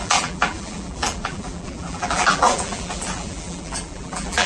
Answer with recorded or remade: remade